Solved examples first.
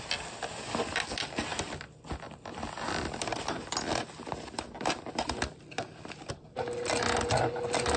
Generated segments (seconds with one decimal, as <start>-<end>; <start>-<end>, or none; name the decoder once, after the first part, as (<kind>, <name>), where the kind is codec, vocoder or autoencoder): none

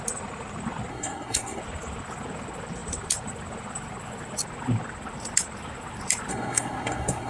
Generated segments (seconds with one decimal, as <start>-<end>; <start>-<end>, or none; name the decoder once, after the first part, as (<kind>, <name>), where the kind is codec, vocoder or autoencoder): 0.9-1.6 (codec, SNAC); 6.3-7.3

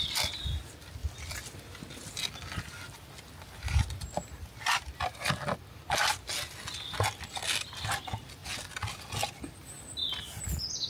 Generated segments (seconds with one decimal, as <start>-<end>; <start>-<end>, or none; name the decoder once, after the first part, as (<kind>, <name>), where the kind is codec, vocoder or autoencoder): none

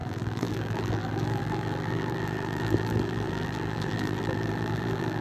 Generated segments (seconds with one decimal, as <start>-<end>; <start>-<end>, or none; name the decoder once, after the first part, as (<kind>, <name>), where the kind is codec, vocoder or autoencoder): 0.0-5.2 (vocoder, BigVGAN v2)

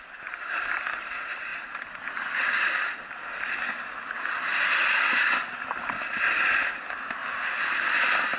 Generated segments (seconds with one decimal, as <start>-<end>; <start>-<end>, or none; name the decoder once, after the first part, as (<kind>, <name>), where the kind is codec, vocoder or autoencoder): none